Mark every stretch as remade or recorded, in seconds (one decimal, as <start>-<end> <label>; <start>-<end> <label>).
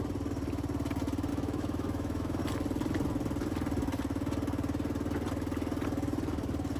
0.0-1.3 recorded; 1.3-2.4 remade; 2.4-6.8 recorded